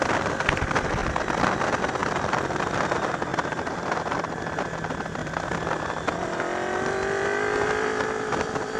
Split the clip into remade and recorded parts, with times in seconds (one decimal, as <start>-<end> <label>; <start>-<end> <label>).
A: 0.0-2.0 recorded; 2.0-2.6 remade; 2.6-3.3 recorded; 3.3-3.9 remade; 3.9-5.2 recorded; 5.2-8.8 remade